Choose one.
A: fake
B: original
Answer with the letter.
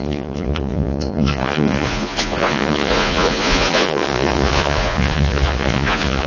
A